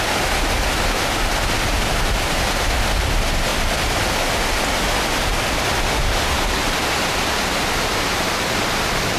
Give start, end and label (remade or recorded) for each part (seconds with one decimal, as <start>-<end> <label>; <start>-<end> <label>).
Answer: 0.0-9.2 recorded